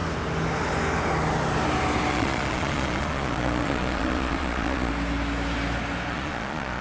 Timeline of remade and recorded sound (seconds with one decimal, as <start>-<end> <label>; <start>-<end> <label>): 0.0-2.1 recorded; 2.1-4.9 remade; 4.9-6.1 recorded; 6.1-6.8 remade